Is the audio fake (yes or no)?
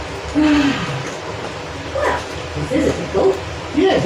yes